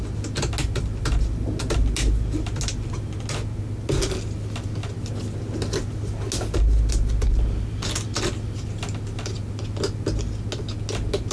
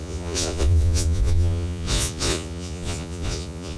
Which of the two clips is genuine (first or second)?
first